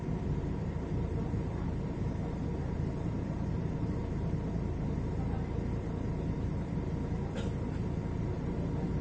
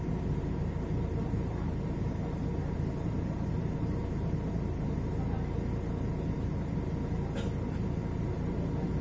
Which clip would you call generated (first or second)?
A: first